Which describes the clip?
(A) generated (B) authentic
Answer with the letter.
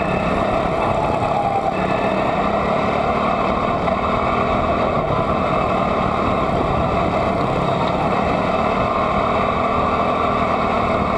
B